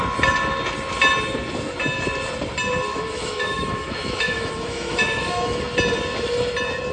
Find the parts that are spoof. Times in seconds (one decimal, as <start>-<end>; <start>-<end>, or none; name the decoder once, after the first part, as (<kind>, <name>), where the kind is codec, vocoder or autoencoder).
2.9-5.6 (autoencoder, DAC-VAE)